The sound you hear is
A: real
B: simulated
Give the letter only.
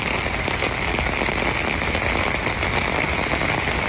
A